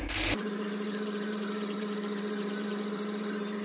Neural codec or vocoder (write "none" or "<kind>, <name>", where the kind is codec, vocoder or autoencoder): vocoder, BigVGAN v2